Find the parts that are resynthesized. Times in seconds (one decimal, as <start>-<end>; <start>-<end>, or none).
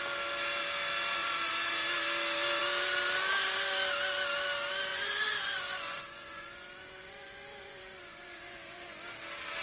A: 4.9-9.0